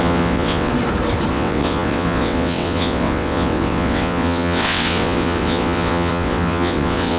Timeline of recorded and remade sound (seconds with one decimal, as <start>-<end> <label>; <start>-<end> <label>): 0.0-0.7 remade; 0.7-1.3 recorded; 1.3-7.2 remade